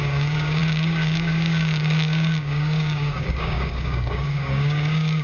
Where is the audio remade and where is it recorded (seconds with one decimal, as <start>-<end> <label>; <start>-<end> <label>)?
0.0-5.2 remade